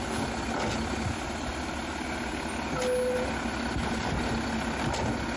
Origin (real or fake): real